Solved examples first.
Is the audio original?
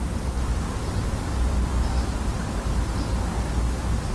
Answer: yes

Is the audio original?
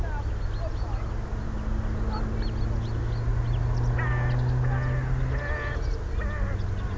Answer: yes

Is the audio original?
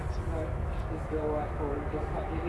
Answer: yes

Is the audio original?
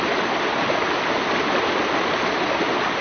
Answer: yes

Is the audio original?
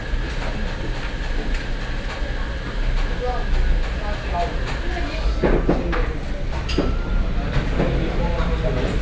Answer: yes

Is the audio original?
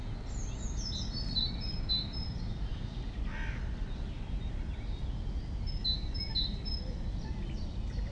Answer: yes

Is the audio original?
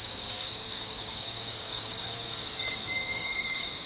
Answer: no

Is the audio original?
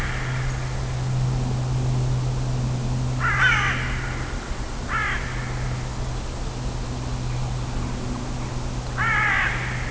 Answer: yes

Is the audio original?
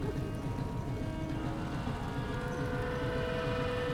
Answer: yes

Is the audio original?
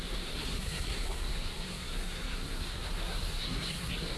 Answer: no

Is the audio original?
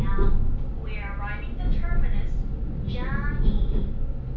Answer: yes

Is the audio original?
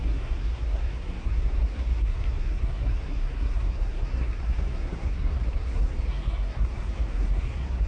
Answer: no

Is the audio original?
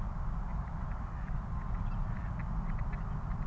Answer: yes